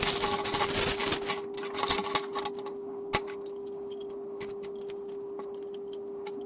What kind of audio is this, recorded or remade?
recorded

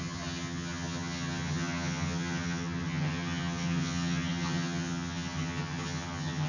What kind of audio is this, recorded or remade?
remade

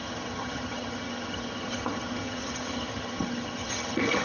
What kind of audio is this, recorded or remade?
remade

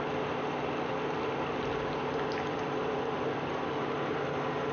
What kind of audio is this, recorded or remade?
recorded